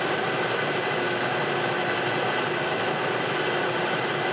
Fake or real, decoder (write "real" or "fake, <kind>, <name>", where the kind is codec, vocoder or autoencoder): real